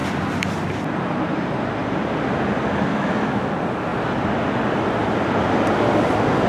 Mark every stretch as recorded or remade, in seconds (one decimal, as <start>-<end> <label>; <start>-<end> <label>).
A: 0.0-2.9 recorded; 2.9-3.5 remade; 3.5-6.5 recorded